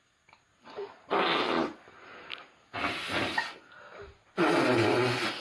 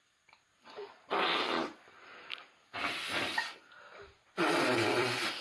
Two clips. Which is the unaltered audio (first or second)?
first